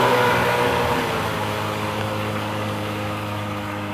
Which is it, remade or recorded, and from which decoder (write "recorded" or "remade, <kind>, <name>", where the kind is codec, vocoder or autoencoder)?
remade, codec, DAC